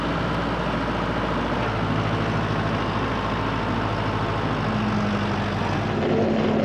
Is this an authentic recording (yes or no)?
yes